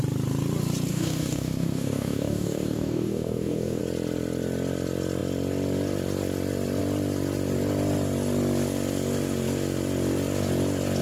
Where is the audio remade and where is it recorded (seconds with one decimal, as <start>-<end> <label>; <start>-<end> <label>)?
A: 0.0-0.9 recorded; 0.9-3.8 remade; 3.8-11.0 recorded